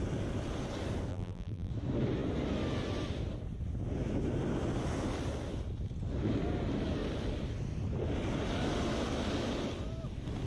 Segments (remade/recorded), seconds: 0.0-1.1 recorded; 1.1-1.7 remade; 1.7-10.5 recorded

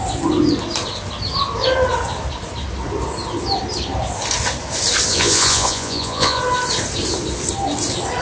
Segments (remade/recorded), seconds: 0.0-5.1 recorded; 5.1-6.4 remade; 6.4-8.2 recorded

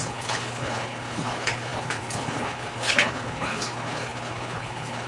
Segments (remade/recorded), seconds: 0.0-5.1 remade